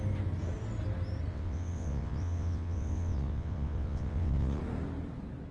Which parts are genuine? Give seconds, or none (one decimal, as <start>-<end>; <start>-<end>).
0.0-1.3; 4.6-5.5